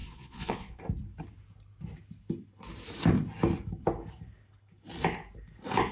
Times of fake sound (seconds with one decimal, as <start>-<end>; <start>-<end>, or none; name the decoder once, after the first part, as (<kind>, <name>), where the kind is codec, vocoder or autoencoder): 0.0-0.8 (vocoder, Vocos)